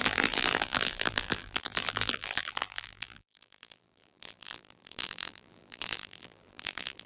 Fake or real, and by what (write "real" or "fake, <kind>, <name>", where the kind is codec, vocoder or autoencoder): fake, vocoder, BigVGAN v2